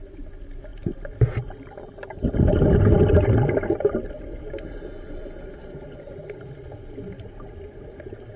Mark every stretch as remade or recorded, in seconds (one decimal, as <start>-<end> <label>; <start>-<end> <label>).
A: 0.0-8.4 recorded